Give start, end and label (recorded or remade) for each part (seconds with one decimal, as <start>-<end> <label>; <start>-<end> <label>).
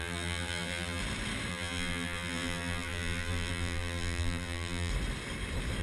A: 0.0-1.0 remade; 1.0-1.5 recorded; 1.5-4.9 remade; 4.9-5.8 recorded